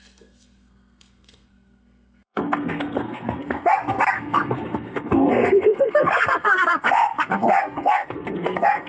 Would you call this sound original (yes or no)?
no